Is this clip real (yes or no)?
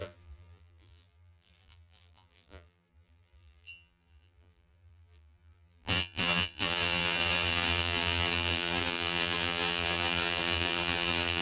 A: no